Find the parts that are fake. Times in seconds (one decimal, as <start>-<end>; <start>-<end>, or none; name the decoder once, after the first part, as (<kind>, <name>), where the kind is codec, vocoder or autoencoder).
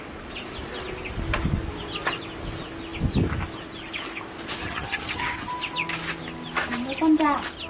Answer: 4.6-5.5 (vocoder, HiFi-GAN)